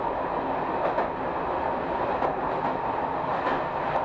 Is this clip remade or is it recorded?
recorded